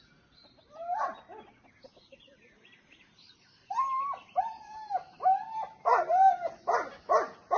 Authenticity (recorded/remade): recorded